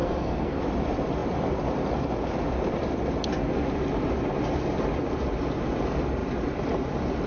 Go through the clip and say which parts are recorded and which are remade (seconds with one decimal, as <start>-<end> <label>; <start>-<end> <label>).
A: 0.0-0.6 remade; 0.6-7.3 recorded